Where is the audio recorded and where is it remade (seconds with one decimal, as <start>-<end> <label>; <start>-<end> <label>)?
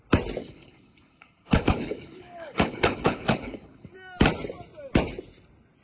0.0-0.4 recorded; 0.4-3.9 remade; 3.9-5.8 recorded